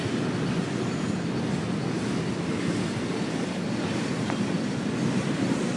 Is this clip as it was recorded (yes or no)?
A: yes